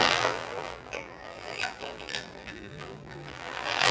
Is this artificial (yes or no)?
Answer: yes